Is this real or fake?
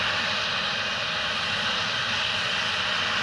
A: real